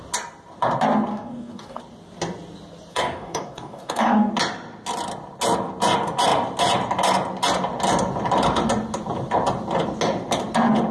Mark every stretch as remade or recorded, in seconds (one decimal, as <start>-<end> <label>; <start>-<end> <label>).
0.0-1.1 recorded; 1.1-1.8 remade; 1.8-2.9 recorded; 2.9-4.3 remade; 4.3-10.9 recorded